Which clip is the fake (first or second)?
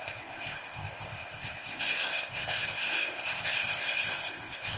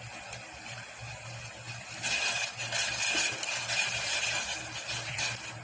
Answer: first